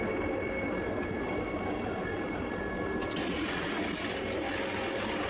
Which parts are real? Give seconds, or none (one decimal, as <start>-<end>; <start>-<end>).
0.0-3.2; 3.7-5.3